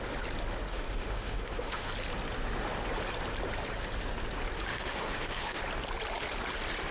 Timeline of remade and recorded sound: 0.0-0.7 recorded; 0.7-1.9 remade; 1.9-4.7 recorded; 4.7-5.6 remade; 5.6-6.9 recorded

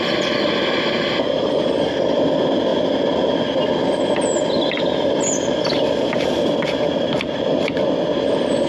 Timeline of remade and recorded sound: 0.0-8.7 recorded

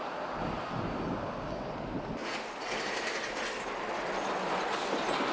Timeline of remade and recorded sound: 0.0-5.3 recorded

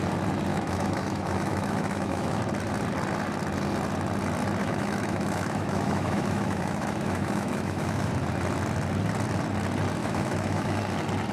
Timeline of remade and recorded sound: 0.0-0.5 recorded; 0.5-2.4 remade; 2.4-4.6 recorded; 4.6-8.1 remade; 8.1-10.0 recorded; 10.0-10.8 remade; 10.8-11.3 recorded